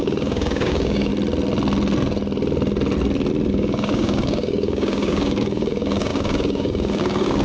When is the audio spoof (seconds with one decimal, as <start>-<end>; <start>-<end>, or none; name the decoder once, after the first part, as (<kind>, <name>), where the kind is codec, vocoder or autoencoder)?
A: 0.0-1.1 (codec, DAC); 3.5-7.4